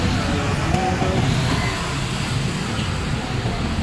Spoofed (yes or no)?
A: no